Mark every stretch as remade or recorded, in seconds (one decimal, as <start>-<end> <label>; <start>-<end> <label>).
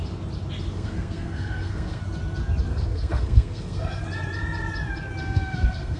0.0-0.7 recorded; 0.7-2.0 remade; 2.0-2.7 recorded; 2.7-4.0 remade; 4.0-5.2 recorded; 5.2-6.0 remade